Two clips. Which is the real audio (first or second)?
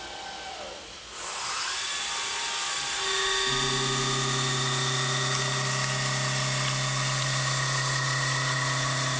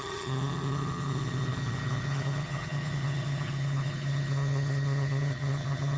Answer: first